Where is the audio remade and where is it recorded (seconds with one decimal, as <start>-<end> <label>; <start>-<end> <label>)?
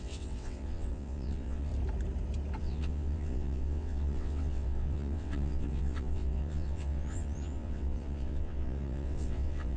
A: 0.0-1.7 remade; 1.7-2.6 recorded; 2.6-9.8 remade